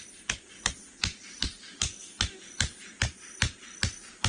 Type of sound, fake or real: real